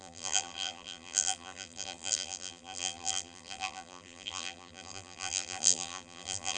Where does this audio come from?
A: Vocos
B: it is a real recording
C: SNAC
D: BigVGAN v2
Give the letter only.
D